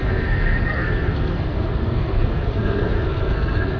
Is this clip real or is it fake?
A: fake